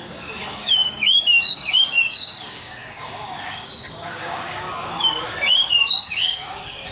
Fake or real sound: fake